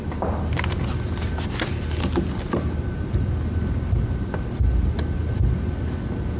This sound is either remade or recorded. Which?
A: recorded